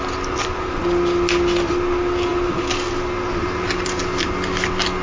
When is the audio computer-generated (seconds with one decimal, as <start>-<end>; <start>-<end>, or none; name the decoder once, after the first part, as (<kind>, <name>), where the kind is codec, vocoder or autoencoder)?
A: none